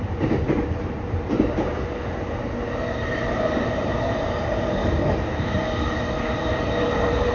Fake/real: fake